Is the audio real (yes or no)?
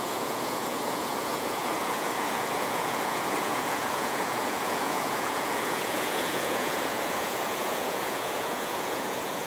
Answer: no